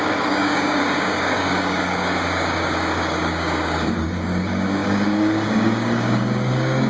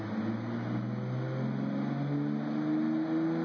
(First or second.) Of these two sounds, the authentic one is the second